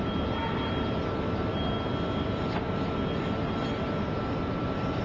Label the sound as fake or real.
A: real